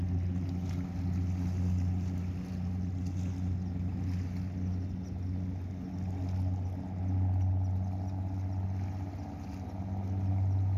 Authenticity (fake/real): real